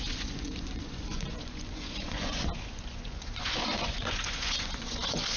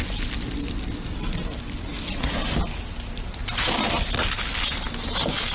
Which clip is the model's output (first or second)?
first